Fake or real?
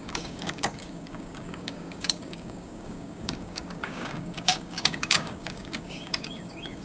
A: fake